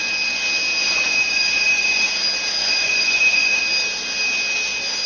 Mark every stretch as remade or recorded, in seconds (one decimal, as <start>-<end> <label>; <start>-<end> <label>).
0.0-0.8 recorded; 0.8-2.1 remade; 2.1-2.6 recorded; 2.6-3.6 remade; 3.6-5.1 recorded